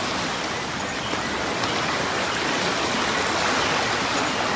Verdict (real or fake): real